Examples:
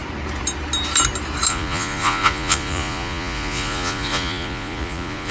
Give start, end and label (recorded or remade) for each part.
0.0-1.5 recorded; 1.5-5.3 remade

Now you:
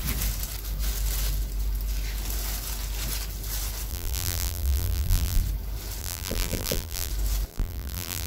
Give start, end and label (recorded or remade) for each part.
0.0-3.9 recorded; 3.9-5.4 remade; 5.4-6.0 recorded; 6.0-7.1 remade; 7.1-7.5 recorded; 7.5-8.3 remade

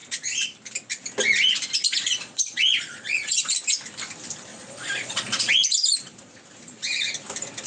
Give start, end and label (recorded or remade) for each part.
0.0-2.1 recorded; 2.1-3.4 remade; 3.4-4.5 recorded; 4.5-5.5 remade; 5.5-7.7 recorded

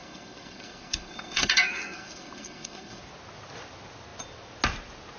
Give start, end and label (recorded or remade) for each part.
0.0-3.0 remade; 3.0-5.2 recorded

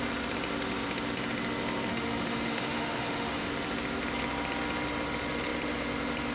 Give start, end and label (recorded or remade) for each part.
0.0-1.9 recorded; 1.9-3.5 remade; 3.5-6.3 recorded